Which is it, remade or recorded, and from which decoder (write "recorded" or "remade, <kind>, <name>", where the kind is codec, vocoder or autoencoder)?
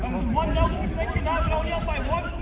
recorded